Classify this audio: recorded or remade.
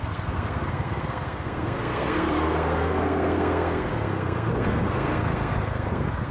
remade